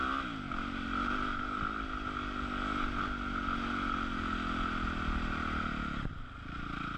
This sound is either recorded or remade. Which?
recorded